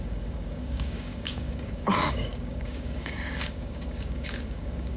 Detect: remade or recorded remade